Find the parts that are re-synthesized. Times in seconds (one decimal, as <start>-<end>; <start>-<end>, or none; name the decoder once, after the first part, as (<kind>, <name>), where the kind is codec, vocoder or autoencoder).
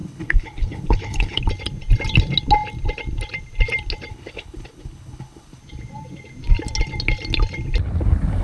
0.0-1.4 (codec, HILCodec); 4.1-5.6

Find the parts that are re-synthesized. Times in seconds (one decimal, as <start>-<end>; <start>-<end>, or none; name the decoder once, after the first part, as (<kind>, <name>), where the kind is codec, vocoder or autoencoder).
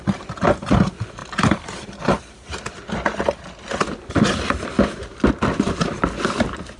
none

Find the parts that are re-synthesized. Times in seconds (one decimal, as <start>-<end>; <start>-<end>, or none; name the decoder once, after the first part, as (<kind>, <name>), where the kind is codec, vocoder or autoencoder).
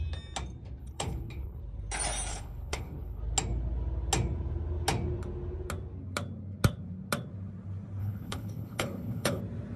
0.8-1.6 (codec, HILCodec); 2.3-3.2; 8.0-9.4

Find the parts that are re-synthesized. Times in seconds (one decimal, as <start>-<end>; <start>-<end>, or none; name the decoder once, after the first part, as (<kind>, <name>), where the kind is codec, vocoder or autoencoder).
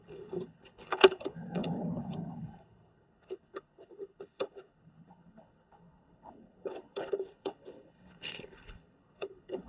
0.0-9.7 (codec, HILCodec)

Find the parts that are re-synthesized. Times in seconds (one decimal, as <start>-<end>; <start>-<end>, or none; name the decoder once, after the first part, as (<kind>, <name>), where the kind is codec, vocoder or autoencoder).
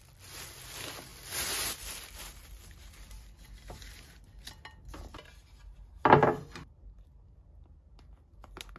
none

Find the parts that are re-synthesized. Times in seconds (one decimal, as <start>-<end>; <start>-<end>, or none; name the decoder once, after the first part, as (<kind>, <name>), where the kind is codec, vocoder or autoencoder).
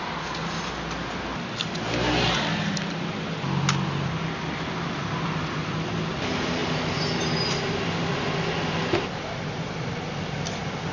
none